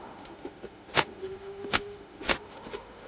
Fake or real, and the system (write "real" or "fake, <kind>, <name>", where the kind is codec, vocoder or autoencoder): fake, autoencoder, DAC-VAE